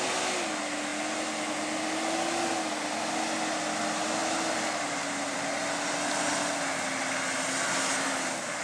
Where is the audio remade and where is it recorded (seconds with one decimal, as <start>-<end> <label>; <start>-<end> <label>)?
0.0-8.6 recorded